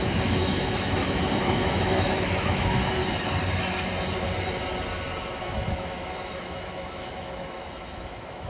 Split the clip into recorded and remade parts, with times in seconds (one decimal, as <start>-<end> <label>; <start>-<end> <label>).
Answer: 0.0-3.0 remade; 3.0-5.4 recorded; 5.4-8.5 remade